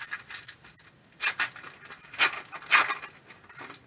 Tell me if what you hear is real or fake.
real